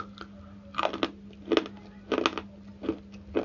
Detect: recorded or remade recorded